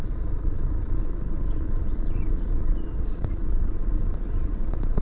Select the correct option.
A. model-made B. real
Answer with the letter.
A